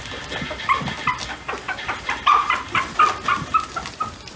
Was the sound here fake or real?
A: real